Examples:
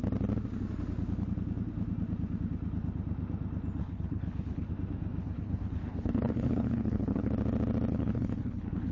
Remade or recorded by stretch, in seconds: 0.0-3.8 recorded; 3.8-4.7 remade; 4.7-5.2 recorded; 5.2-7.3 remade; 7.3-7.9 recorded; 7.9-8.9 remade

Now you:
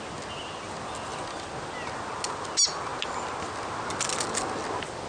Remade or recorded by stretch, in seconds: 0.0-5.1 recorded

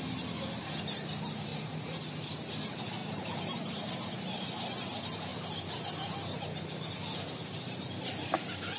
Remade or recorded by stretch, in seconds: 0.0-1.5 recorded; 1.5-2.0 remade; 2.0-3.0 recorded; 3.0-4.1 remade; 4.1-8.8 recorded

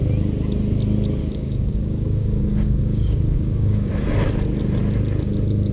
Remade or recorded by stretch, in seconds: 0.0-1.2 recorded; 1.2-3.9 remade; 3.9-5.7 recorded